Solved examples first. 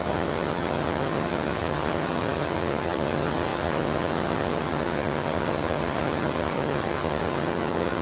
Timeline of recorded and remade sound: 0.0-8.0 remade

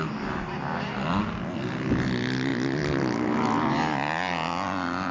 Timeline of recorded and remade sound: 0.0-5.1 recorded

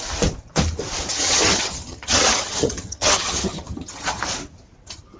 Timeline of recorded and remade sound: 0.0-1.1 recorded; 1.1-4.2 remade; 4.2-5.2 recorded

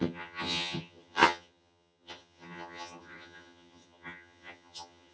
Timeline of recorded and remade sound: 0.0-5.1 remade

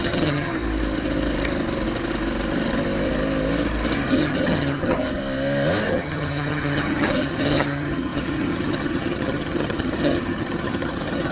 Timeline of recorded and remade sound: 0.0-0.5 remade; 0.5-4.1 recorded; 4.1-5.2 remade; 5.2-5.9 recorded; 5.9-11.3 remade